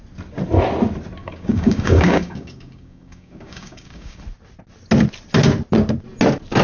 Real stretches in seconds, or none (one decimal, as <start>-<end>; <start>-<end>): 0.0-1.2; 4.2-6.6